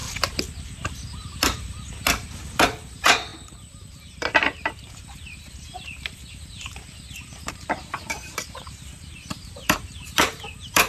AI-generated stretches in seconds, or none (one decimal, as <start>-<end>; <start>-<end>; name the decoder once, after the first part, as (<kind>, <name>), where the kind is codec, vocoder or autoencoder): 2.6-10.9 (vocoder, BigVGAN v2)